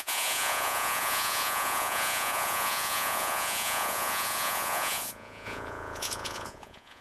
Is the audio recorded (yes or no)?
no